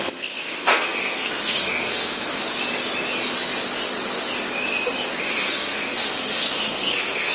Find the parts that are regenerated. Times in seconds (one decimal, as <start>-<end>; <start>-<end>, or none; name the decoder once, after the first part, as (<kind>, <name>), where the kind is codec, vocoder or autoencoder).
0.0-2.4 (codec, SNAC); 5.2-7.3